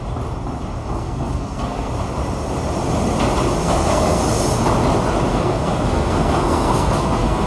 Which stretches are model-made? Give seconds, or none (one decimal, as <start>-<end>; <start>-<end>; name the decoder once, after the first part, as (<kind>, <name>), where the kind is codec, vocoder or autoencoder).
0.8-1.9 (codec, SNAC); 3.6-4.2; 5.3-7.5